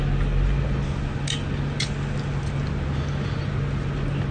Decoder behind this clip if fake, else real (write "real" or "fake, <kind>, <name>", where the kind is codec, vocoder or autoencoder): real